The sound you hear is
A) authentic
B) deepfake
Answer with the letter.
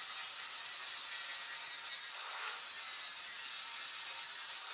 A